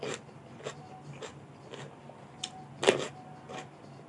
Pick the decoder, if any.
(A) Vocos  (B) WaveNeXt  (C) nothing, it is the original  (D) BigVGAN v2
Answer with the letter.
C